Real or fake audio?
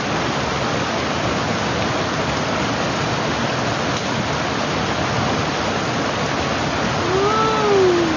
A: real